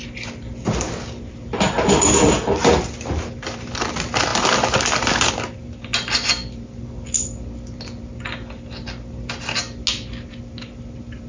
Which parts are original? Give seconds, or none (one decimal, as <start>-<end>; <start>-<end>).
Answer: 0.0-11.3